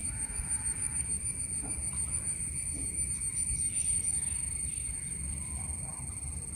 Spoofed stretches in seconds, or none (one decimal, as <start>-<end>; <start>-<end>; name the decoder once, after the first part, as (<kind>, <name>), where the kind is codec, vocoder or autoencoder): 0.0-2.8 (vocoder, BigVGAN v2); 3.8-6.6